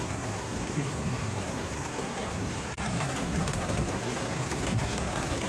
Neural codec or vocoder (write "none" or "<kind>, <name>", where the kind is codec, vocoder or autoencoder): codec, SNAC